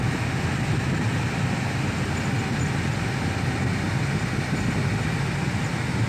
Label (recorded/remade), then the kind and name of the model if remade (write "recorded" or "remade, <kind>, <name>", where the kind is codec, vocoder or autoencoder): recorded